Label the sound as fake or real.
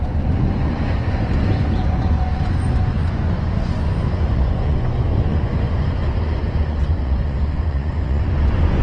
fake